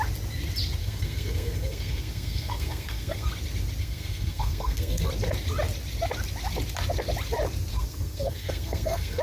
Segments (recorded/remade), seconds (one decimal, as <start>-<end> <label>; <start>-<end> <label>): 0.0-0.8 recorded; 0.8-3.3 remade; 3.3-3.8 recorded; 3.8-5.1 remade; 5.1-7.7 recorded; 7.7-9.2 remade